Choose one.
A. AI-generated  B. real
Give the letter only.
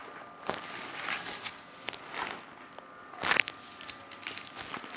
B